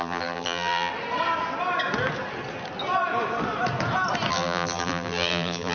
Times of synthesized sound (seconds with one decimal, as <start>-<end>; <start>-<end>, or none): 0.0-0.9; 4.3-5.7